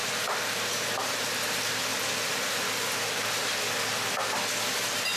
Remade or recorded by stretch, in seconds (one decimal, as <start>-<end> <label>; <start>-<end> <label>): 0.0-5.2 recorded